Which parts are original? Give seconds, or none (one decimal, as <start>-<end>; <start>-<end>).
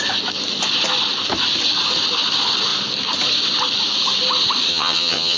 0.0-4.7